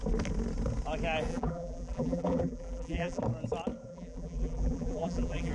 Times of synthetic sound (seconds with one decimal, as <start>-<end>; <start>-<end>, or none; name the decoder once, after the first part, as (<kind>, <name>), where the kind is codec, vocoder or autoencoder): 1.3-3.2 (vocoder, BigVGAN v2); 3.9-5.5

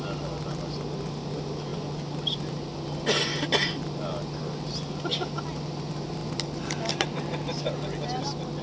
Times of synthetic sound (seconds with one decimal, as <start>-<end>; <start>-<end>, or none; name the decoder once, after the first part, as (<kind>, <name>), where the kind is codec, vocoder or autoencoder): none

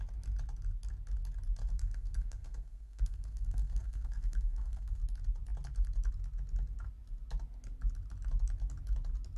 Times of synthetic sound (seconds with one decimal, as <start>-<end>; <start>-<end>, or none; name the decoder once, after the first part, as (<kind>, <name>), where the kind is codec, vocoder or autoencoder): 1.6-5.0 (codec, SNAC)

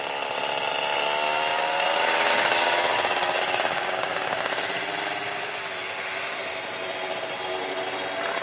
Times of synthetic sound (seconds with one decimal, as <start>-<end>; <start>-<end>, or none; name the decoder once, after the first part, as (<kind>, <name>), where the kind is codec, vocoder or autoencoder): 1.5-4.6 (codec, DAC)

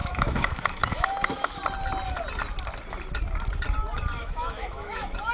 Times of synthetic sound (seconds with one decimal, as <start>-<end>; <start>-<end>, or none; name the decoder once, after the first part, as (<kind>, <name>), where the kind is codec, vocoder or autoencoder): 0.0-1.6 (autoencoder, DAC-VAE); 4.2-5.3